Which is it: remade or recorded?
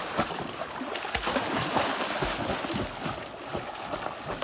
recorded